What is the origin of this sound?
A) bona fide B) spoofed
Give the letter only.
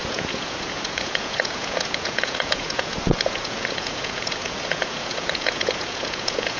B